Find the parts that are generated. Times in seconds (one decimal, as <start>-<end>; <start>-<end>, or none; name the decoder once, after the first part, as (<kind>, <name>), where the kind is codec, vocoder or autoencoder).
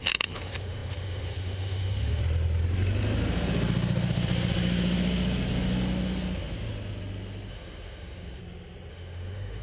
0.0-2.2 (autoencoder, DAC-VAE); 7.5-8.4; 8.9-9.6